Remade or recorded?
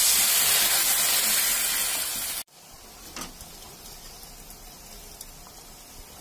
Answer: recorded